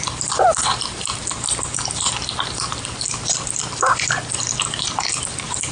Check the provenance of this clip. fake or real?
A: real